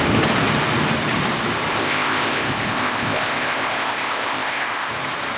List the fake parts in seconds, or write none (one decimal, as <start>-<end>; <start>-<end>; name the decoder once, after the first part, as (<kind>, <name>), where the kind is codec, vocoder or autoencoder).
1.7-4.9 (codec, ZipCodec)